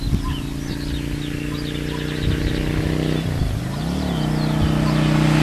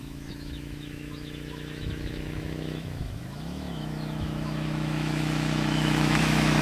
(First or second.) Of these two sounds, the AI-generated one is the second